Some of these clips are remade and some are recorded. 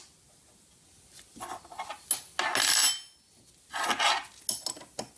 recorded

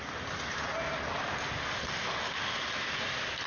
recorded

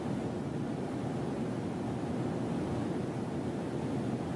recorded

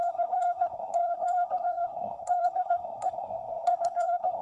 remade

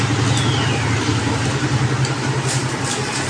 recorded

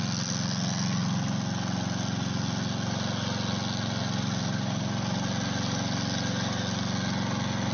recorded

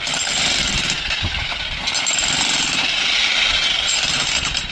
recorded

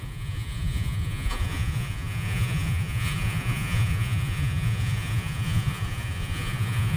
remade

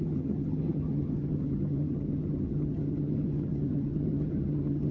remade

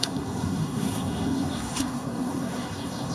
remade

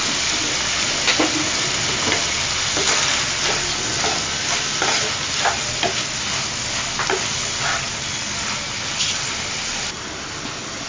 recorded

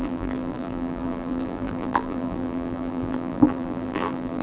remade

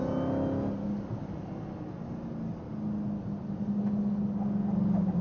recorded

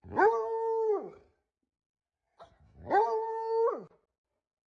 recorded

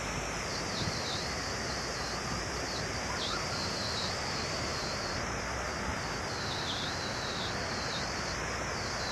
remade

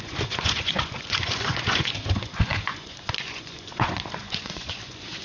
remade